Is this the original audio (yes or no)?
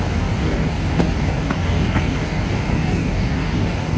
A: no